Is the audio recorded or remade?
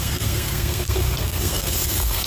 remade